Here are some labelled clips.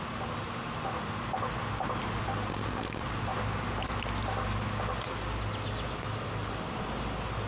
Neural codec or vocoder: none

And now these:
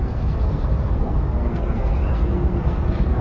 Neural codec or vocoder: codec, SNAC